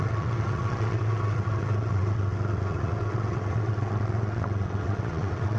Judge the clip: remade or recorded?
remade